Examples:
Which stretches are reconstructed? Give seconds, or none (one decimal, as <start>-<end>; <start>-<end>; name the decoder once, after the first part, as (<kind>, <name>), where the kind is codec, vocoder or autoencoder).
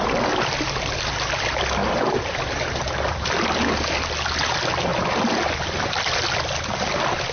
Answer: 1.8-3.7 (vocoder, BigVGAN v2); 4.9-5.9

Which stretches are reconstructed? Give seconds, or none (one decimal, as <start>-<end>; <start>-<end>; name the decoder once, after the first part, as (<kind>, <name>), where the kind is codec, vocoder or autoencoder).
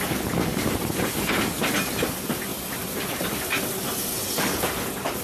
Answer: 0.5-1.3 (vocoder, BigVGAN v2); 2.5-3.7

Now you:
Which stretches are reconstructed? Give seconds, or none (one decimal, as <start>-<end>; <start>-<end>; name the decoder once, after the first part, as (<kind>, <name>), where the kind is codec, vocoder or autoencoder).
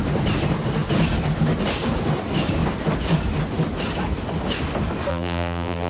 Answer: 5.1-5.9 (vocoder, BigVGAN v2)